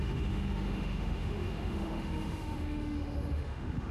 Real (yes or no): no